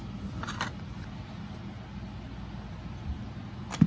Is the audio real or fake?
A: real